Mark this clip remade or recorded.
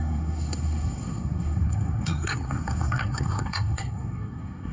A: remade